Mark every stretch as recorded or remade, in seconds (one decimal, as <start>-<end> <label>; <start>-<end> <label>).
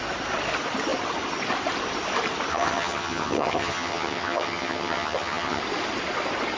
0.0-2.5 recorded; 2.5-5.6 remade; 5.6-6.6 recorded